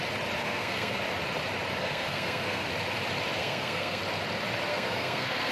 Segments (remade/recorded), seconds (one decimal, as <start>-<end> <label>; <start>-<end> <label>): 0.0-0.4 recorded; 0.4-1.0 remade; 1.0-1.8 recorded; 1.8-2.7 remade; 2.7-3.4 recorded; 3.4-4.0 remade; 4.0-4.7 recorded; 4.7-5.5 remade